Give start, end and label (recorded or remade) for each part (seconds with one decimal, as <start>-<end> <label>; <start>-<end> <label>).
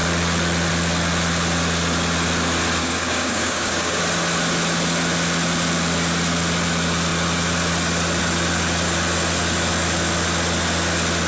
0.0-2.8 recorded; 2.8-4.0 remade; 4.0-11.3 recorded